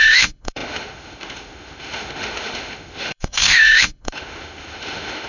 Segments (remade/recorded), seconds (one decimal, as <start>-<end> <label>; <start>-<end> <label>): 0.0-5.3 remade

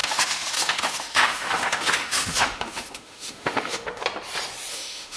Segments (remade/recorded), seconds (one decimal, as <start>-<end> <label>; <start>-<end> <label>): 0.0-4.0 remade; 4.0-4.7 recorded; 4.7-5.2 remade

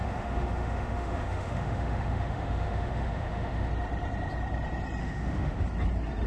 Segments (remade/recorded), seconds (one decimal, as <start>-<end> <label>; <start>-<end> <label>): 0.0-3.7 remade; 3.7-5.0 recorded; 5.0-5.6 remade; 5.6-6.3 recorded